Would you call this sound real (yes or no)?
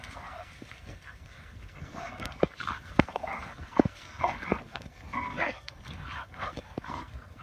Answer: no